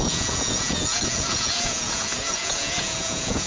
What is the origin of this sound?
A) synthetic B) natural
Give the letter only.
A